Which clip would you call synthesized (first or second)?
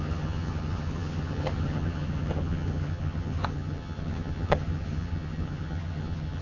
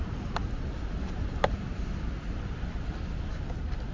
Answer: first